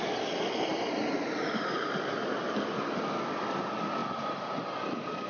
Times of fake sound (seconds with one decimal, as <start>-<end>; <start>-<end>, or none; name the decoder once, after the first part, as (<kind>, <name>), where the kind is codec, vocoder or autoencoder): 0.7-3.0 (vocoder, BigVGAN v2); 4.0-4.7